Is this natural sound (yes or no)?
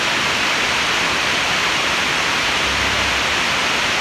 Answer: yes